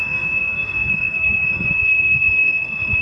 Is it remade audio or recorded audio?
remade